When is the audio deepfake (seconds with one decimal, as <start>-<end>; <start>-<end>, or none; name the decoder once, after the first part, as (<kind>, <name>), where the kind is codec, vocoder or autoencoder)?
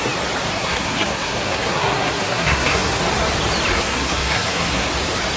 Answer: 0.5-3.0 (codec, SNAC); 3.7-4.9